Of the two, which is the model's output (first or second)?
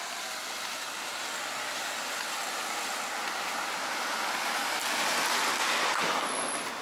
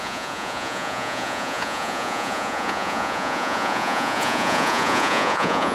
second